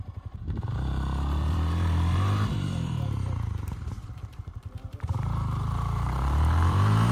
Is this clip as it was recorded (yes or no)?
no